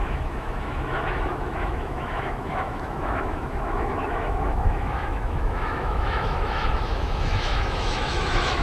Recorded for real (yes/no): no